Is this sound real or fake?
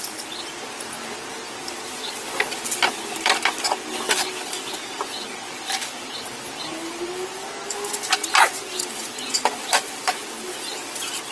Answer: fake